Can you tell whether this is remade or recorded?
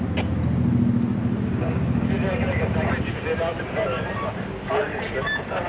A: recorded